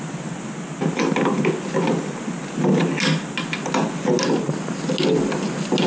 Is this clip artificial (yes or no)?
no